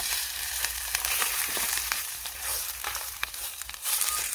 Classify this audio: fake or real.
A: fake